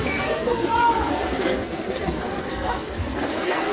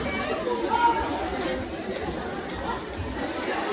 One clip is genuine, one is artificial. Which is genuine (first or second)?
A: second